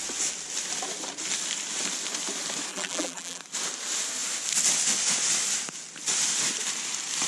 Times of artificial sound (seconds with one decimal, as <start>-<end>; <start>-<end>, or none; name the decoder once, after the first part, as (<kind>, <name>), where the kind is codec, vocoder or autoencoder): 2.7-3.4 (vocoder, BigVGAN v2)